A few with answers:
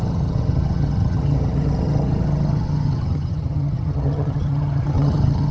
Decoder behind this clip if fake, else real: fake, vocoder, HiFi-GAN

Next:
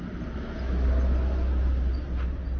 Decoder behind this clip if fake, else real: real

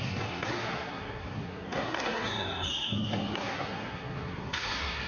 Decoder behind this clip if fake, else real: fake, codec, SNAC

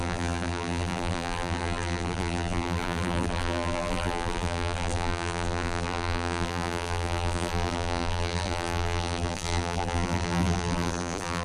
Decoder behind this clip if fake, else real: fake, vocoder, BigVGAN v2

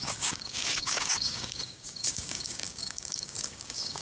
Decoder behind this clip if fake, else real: fake, codec, DAC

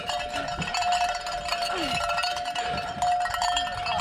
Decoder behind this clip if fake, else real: real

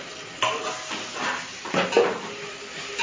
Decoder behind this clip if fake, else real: fake, vocoder, BigVGAN v2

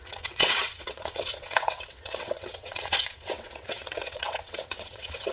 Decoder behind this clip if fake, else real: fake, vocoder, WaveNeXt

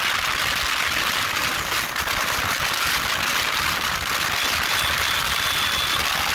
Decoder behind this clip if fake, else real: real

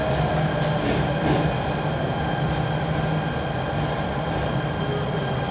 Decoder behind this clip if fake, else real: real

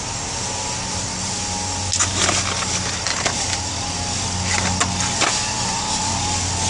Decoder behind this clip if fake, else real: real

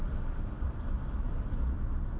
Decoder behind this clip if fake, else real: real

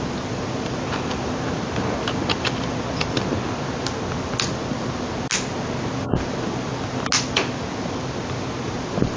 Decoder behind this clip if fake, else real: real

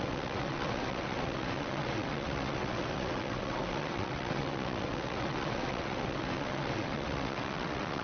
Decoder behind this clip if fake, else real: fake, vocoder, WaveNeXt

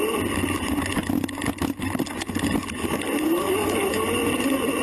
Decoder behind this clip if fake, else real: real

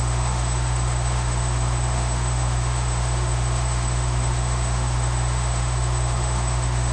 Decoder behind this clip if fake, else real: fake, autoencoder, DAC-VAE